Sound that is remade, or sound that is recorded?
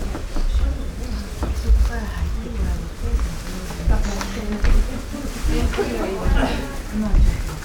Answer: recorded